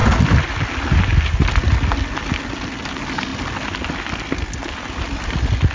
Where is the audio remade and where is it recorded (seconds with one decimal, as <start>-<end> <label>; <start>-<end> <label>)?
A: 0.0-5.7 recorded